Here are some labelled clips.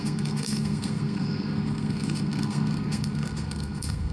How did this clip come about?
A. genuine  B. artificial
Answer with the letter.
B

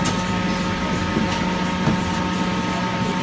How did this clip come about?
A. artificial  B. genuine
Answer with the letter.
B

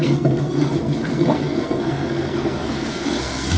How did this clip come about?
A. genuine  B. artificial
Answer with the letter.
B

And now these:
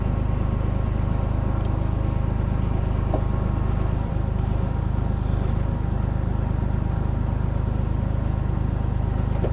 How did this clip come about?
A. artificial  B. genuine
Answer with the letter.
B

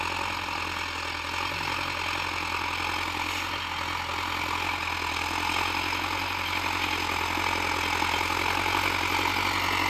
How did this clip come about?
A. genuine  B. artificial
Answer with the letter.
A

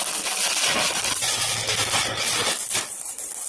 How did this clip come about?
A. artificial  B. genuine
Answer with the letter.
B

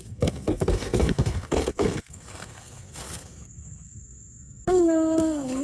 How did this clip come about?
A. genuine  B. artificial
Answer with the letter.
B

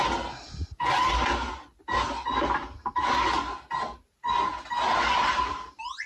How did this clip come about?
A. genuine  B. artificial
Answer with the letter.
A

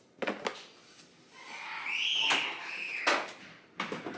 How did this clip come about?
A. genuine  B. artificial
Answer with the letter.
A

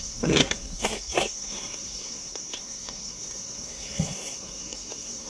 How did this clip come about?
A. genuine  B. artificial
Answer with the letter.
B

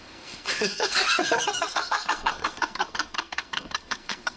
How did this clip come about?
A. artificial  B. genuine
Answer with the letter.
A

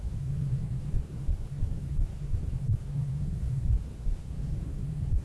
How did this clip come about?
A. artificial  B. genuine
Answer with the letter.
A